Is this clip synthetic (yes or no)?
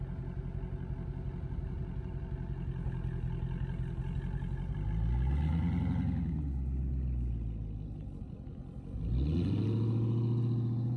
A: no